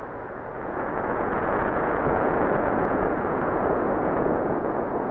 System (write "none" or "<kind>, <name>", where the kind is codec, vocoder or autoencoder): vocoder, Vocos